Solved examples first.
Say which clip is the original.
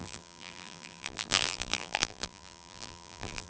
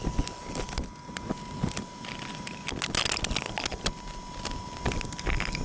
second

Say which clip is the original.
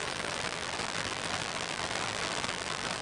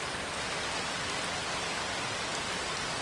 second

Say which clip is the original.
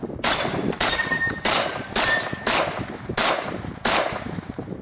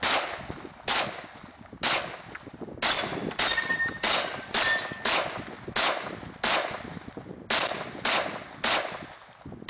second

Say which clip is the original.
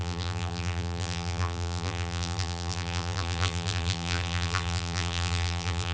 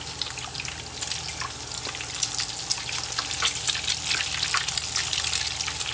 second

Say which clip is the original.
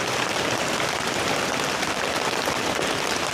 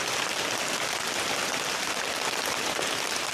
second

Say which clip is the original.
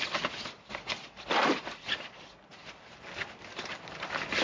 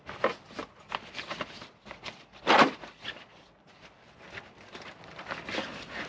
second